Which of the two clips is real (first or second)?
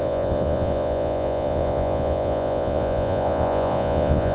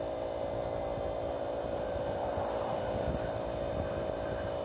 second